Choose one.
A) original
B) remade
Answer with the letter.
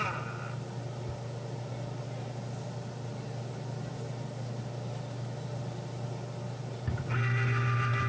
A